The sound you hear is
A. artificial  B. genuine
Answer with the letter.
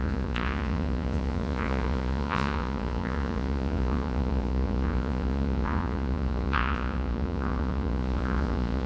A